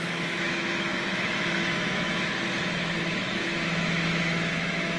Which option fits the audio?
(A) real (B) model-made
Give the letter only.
B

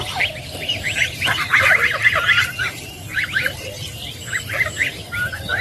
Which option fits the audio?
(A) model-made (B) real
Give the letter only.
B